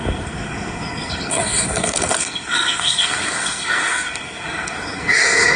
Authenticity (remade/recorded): remade